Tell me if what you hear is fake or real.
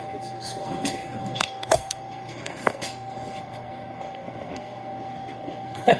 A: fake